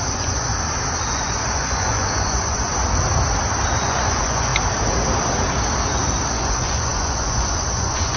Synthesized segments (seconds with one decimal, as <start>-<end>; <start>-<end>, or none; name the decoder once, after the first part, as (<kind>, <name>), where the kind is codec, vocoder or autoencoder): 0.0-0.5 (vocoder, Vocos); 1.1-2.7; 3.8-4.5; 6.3-8.2